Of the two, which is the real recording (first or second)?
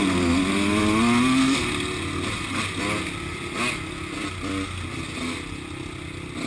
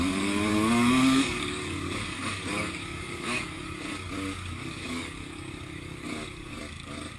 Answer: first